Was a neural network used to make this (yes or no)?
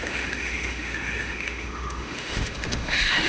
yes